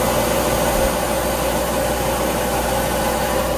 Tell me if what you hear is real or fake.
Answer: real